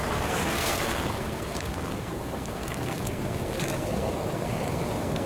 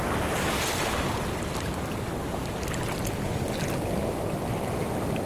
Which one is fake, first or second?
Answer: first